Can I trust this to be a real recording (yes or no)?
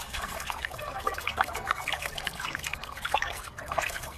no